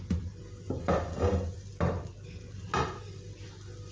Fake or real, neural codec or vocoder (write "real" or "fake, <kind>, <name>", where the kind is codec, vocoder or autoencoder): real